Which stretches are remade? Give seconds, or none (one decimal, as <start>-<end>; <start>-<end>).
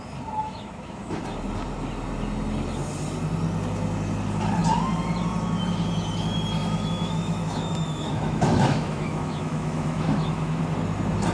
0.4-1.2; 6.6-10.6